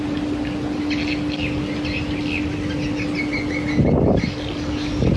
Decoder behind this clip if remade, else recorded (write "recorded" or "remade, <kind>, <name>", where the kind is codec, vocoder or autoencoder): recorded